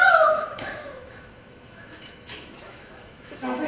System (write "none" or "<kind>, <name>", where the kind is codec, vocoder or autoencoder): autoencoder, DAC-VAE